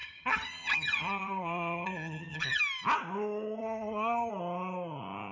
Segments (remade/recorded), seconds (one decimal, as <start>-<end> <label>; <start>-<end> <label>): 0.0-2.6 remade; 2.6-3.6 recorded; 3.6-4.3 remade; 4.3-5.3 recorded